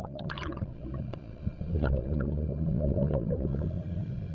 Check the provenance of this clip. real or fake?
fake